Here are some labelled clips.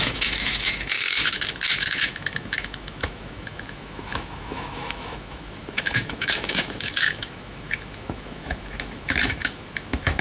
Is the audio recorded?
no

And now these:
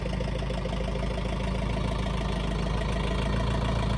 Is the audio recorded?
yes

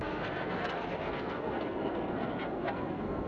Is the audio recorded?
no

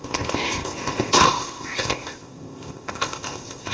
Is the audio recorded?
no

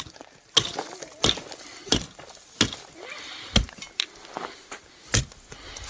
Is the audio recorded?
yes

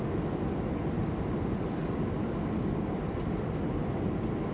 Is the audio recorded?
yes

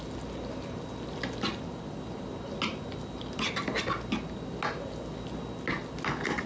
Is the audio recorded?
yes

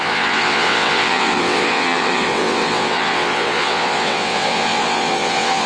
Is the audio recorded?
no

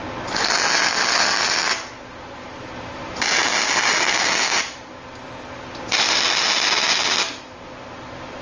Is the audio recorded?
yes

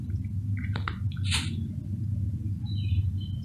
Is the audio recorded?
yes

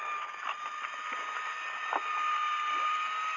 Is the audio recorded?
yes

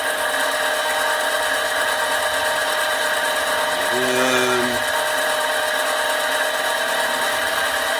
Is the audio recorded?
yes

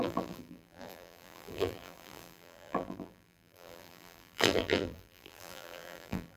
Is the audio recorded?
no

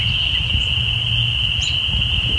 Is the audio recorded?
yes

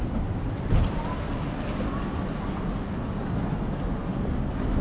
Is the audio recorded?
yes